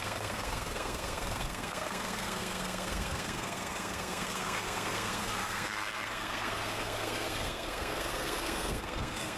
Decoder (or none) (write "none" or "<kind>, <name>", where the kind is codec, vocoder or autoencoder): codec, SNAC